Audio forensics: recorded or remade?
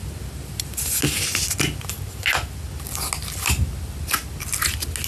recorded